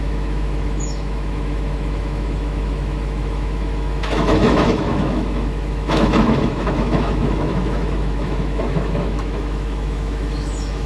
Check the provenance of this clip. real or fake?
fake